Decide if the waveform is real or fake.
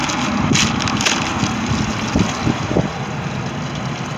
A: real